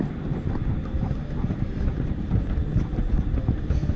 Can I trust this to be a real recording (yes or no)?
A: yes